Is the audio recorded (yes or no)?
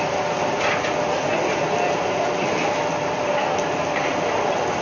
yes